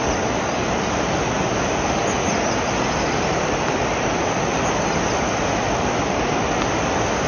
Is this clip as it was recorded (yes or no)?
yes